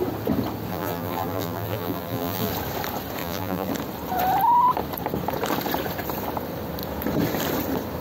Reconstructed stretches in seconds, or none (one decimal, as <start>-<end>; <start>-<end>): 0.7-2.5; 3.2-3.7